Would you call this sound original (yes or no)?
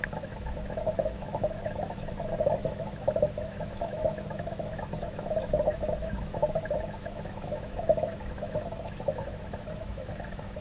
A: no